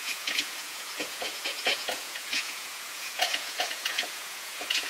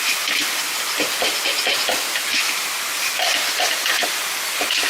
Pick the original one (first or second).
second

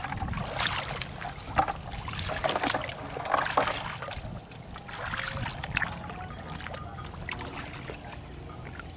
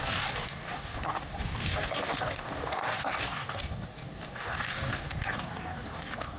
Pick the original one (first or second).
first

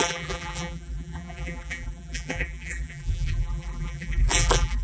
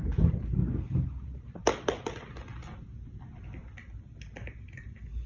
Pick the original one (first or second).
second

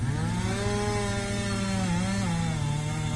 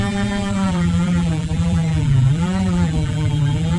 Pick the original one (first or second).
first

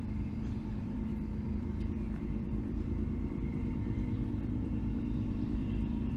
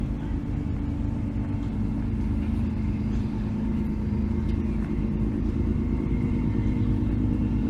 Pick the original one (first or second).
second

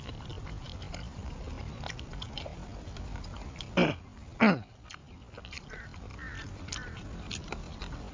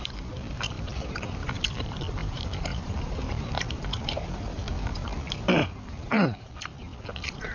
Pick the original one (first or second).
first